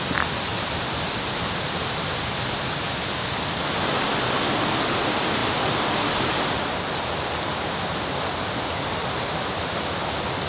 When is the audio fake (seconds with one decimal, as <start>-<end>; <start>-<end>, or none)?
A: none